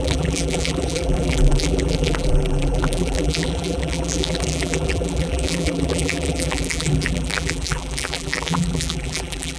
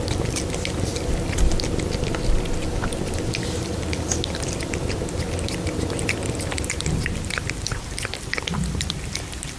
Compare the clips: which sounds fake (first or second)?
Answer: first